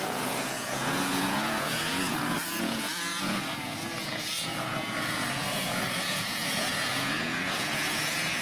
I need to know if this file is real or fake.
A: fake